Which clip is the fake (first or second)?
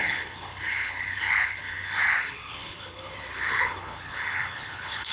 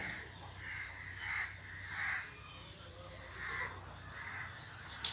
first